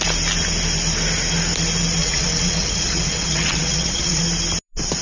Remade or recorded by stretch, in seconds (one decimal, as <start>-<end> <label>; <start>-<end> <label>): 0.0-2.0 recorded; 2.0-4.2 remade; 4.2-5.0 recorded